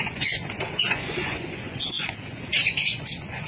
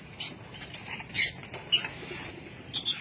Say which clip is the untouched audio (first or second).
second